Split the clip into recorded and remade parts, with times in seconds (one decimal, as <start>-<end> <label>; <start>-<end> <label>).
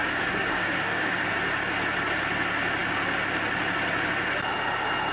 0.0-1.3 remade; 1.3-5.1 recorded